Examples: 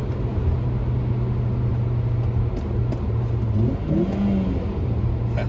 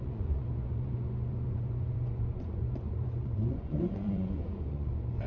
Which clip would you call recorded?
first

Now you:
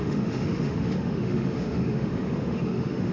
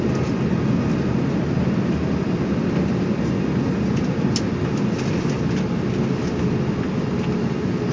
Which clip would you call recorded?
second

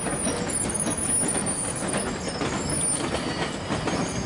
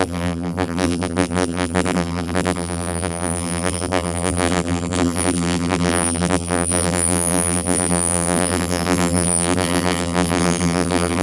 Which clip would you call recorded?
first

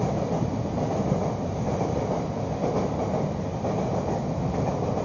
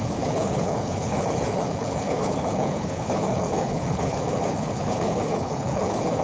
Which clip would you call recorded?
first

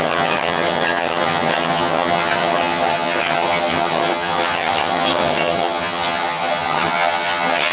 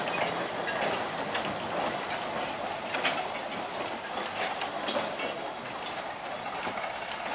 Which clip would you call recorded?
second